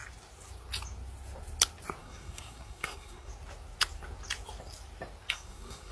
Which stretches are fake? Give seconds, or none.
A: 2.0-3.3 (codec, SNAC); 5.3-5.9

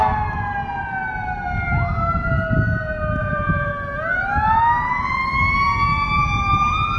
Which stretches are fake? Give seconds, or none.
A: 3.2-3.7 (vocoder, Vocos)

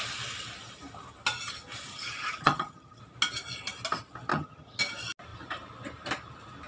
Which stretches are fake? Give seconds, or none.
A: 1.9-3.0 (vocoder, HiFi-GAN); 4.3-4.8

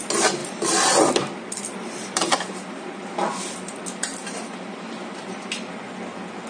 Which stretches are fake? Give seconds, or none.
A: 0.4-2.4 (vocoder, BigVGAN v2)

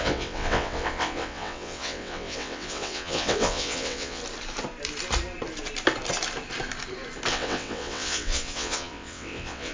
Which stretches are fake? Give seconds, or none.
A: 0.0-4.2 (vocoder, WaveNeXt); 7.3-9.7

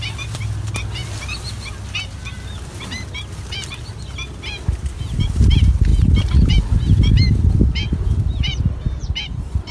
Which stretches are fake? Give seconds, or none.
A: none

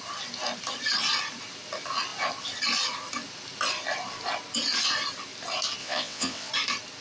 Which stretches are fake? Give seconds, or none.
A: 5.8-6.5 (vocoder, WaveNeXt)